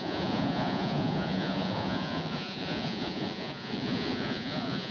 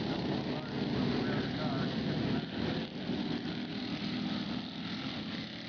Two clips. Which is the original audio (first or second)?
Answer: second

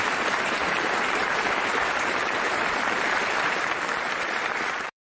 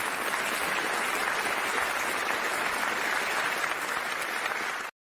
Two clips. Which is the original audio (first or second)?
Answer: second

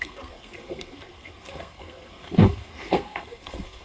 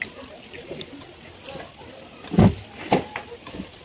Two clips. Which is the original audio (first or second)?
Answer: second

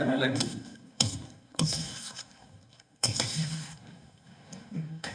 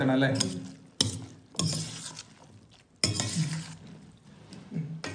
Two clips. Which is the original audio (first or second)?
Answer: second